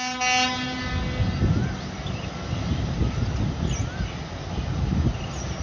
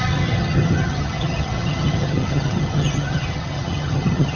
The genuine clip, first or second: first